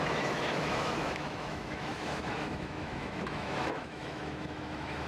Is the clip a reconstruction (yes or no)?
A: yes